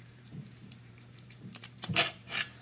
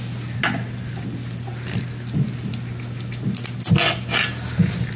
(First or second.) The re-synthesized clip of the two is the first